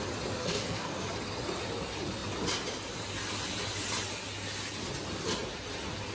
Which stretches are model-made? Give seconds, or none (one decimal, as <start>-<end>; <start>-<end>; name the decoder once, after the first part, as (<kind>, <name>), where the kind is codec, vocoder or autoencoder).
0.4-1.1 (codec, SNAC)

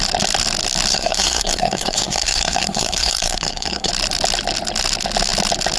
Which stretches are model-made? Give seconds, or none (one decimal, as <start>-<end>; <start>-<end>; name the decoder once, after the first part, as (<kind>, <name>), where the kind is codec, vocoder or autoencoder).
0.9-3.9 (codec, SNAC)